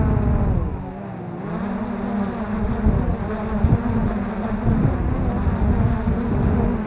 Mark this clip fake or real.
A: real